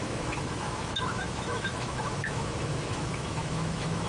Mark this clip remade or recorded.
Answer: remade